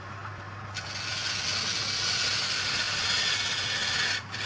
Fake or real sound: real